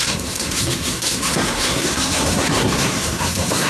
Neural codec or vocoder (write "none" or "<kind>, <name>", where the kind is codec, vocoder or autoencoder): codec, SNAC